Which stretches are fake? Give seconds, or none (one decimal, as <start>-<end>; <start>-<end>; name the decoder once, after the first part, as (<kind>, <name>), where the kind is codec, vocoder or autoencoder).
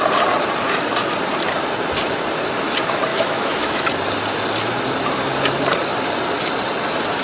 3.1-3.9 (autoencoder, DAC-VAE)